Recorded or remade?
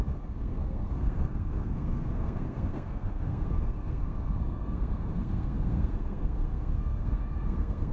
remade